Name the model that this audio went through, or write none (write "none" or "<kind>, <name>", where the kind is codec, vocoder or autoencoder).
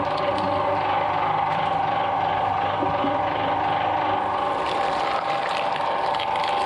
none